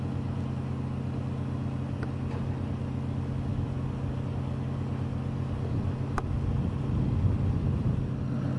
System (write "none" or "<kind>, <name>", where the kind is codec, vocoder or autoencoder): none